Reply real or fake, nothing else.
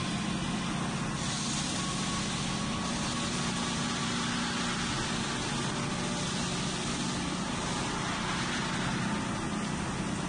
real